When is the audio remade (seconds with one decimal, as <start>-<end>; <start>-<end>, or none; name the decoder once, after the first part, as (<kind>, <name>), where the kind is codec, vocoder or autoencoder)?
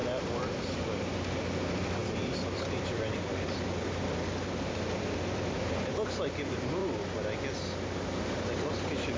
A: 0.0-6.8 (vocoder, BigVGAN v2); 8.7-9.2